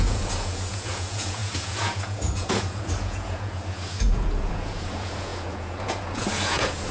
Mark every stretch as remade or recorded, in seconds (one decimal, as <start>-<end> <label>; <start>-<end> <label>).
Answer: 0.0-6.9 remade